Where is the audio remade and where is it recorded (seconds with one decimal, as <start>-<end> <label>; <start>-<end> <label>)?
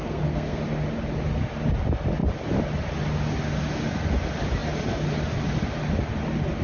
0.0-0.6 remade; 0.6-6.6 recorded